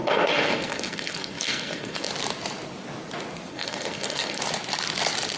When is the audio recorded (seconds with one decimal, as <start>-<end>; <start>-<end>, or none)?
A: 2.1-3.5; 4.4-5.4